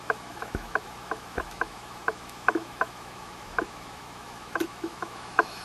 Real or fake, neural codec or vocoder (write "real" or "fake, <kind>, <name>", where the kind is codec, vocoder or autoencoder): fake, autoencoder, DAC-VAE